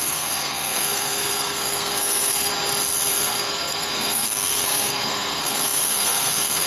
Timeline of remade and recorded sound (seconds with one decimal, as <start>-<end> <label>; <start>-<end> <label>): 0.0-2.5 remade; 2.5-3.1 recorded; 3.1-6.7 remade